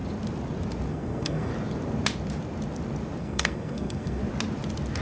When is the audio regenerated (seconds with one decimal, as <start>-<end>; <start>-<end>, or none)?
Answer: 0.9-1.5; 3.2-4.2